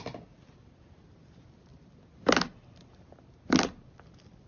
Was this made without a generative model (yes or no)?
yes